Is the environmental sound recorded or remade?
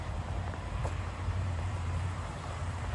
remade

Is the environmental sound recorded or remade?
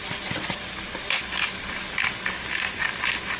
recorded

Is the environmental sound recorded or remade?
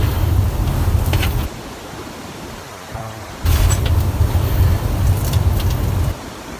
remade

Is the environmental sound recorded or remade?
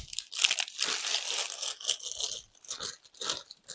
recorded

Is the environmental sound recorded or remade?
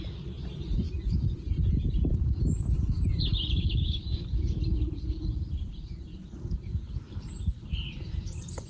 remade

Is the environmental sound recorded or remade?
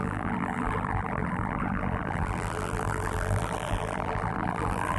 remade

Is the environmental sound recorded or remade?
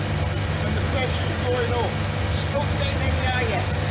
recorded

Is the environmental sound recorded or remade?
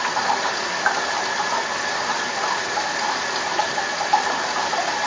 remade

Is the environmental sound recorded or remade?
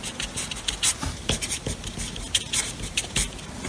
remade